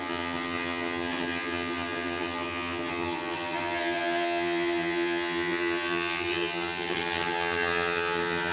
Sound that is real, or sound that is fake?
fake